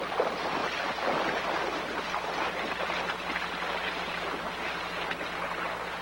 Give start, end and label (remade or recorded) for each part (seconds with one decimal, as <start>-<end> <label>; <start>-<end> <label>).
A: 0.0-6.0 recorded